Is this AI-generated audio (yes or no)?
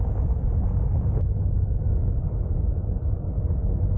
no